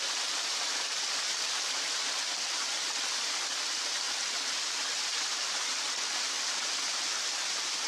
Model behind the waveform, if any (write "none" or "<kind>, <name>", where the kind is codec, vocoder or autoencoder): none